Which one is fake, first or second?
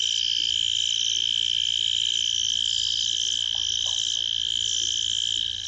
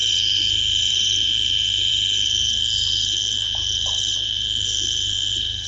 second